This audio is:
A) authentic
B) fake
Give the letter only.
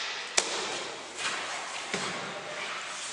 A